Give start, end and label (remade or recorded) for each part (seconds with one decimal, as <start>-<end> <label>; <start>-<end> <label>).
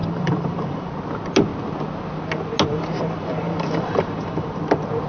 0.0-0.9 remade; 0.9-2.7 recorded; 2.7-4.6 remade; 4.6-5.1 recorded